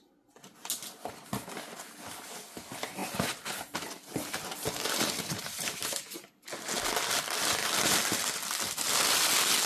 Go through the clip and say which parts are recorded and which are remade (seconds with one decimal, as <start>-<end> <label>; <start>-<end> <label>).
0.0-9.7 recorded